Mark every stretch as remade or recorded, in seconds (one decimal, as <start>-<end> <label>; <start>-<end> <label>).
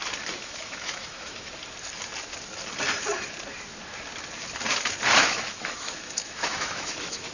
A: 0.0-0.4 recorded; 0.4-1.5 remade; 1.5-5.2 recorded; 5.2-7.3 remade